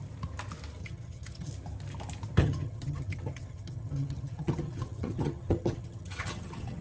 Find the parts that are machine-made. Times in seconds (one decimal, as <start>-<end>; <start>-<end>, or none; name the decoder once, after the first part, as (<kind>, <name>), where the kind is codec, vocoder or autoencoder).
0.8-1.5 (vocoder, HiFi-GAN); 2.4-6.8